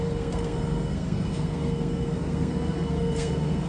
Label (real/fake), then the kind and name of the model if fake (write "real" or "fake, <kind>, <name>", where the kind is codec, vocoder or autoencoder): fake, codec, SNAC